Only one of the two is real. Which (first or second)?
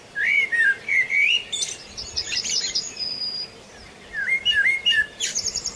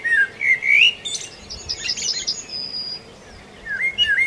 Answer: second